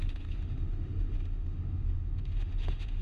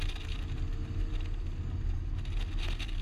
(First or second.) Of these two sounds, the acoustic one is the second